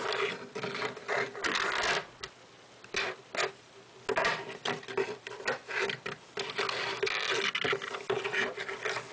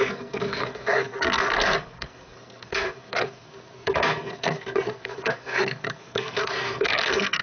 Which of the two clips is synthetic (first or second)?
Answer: second